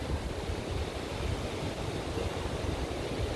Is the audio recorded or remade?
recorded